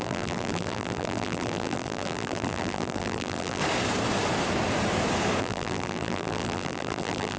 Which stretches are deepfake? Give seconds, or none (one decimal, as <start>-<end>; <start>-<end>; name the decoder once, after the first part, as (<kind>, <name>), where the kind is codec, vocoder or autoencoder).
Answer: 0.0-3.6 (vocoder, BigVGAN v2); 5.4-7.4